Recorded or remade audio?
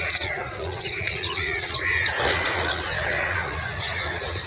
remade